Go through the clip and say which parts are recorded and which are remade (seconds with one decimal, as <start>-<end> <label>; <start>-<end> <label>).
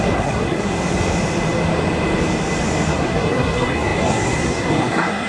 0.0-0.7 remade; 0.7-2.9 recorded; 2.9-5.3 remade